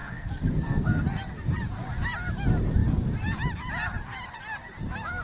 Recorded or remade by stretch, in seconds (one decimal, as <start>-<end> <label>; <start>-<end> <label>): 0.0-1.0 remade; 1.0-5.2 recorded